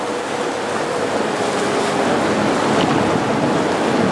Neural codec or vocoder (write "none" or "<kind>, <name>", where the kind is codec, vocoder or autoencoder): none